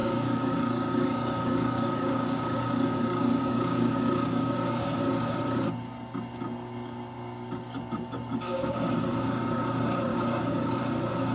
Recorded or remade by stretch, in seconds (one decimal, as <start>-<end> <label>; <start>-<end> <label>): 0.0-5.0 remade; 5.0-8.3 recorded; 8.3-8.9 remade; 8.9-10.1 recorded; 10.1-10.8 remade; 10.8-11.3 recorded